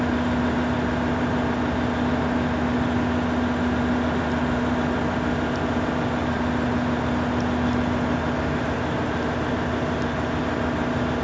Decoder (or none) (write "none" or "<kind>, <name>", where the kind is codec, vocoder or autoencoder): none